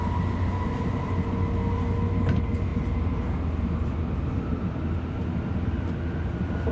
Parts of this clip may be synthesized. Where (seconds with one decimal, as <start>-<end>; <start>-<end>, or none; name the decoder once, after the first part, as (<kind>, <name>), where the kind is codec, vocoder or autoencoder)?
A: none